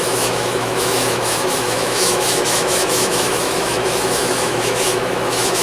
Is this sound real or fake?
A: fake